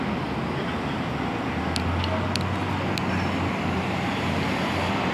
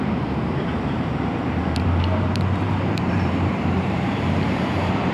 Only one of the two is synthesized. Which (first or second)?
second